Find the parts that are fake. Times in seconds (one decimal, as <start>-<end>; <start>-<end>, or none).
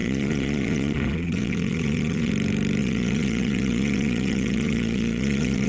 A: 0.0-2.3; 2.8-5.7